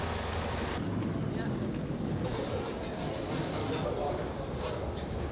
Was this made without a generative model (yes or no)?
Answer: yes